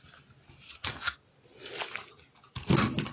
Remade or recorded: recorded